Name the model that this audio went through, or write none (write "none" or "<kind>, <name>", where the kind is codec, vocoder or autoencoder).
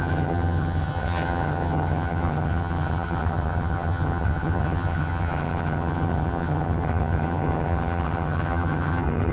vocoder, HiFi-GAN